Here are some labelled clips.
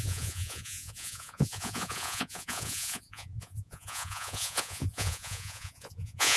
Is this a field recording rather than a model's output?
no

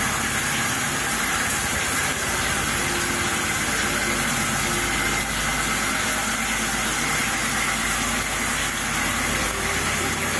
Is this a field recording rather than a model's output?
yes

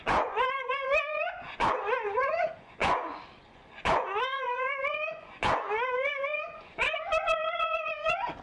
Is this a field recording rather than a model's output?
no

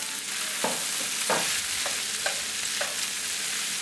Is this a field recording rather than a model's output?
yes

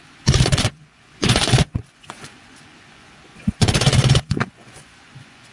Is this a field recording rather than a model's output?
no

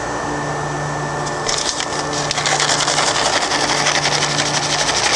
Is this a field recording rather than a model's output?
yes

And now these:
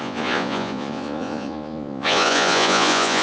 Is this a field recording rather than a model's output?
no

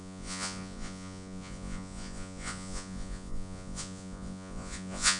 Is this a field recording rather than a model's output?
no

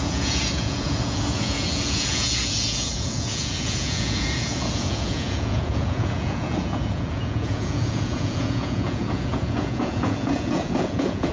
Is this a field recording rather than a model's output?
no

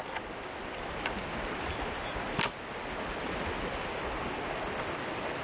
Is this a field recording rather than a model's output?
yes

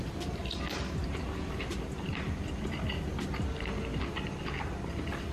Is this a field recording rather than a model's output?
yes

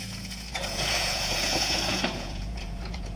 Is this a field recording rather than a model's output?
no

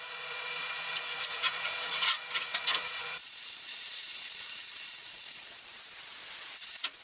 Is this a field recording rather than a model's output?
no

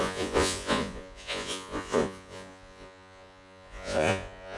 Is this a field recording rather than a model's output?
no